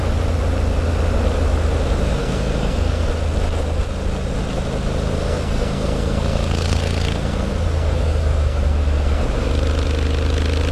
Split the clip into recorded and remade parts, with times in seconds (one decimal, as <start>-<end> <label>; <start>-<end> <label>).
0.0-2.2 recorded; 2.2-3.1 remade; 3.1-5.2 recorded; 5.2-9.2 remade; 9.2-10.7 recorded